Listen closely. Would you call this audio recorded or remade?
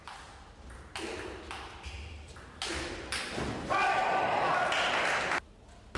recorded